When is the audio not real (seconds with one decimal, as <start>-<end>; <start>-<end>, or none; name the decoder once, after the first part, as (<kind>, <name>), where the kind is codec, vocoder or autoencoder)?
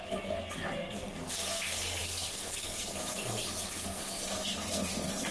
0.0-5.3 (codec, SNAC)